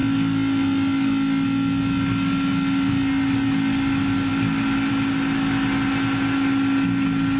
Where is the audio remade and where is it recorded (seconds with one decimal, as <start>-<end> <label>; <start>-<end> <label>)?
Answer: 0.0-7.4 recorded